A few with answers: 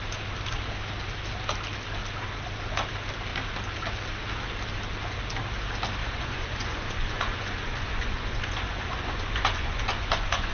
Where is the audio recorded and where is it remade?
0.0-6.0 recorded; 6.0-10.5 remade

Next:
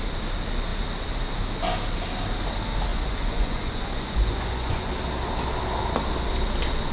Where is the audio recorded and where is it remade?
0.0-2.9 recorded; 2.9-4.9 remade; 4.9-6.9 recorded

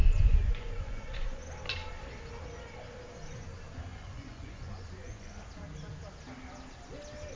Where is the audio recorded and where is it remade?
0.0-1.4 remade; 1.4-3.9 recorded; 3.9-5.4 remade; 5.4-7.4 recorded

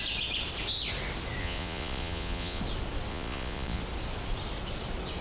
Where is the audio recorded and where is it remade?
0.0-1.4 recorded; 1.4-2.6 remade; 2.6-3.1 recorded; 3.1-3.8 remade; 3.8-5.2 recorded

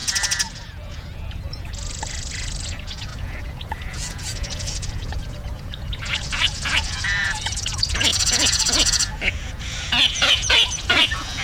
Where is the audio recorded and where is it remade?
0.0-11.4 remade

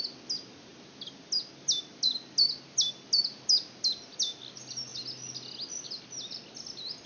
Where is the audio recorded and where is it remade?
0.0-7.1 recorded